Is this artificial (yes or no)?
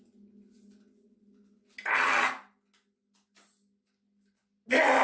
no